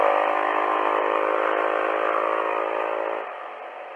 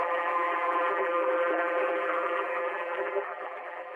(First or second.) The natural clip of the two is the first